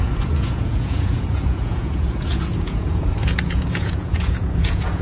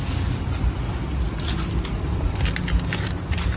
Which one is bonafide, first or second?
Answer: second